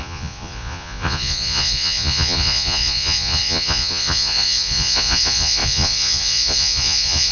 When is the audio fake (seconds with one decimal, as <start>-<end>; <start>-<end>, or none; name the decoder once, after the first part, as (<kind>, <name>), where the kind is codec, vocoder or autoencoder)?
0.0-7.3 (vocoder, Vocos)